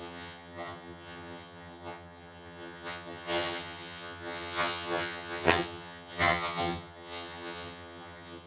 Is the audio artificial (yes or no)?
yes